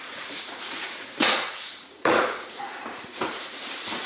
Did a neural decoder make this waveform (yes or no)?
yes